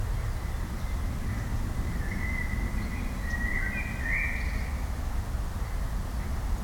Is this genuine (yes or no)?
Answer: yes